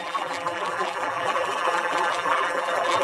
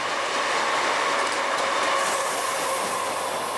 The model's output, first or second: first